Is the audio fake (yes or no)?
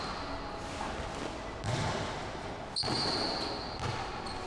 no